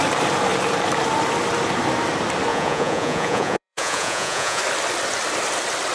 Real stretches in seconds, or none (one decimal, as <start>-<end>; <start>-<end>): 0.0-2.5; 4.6-5.9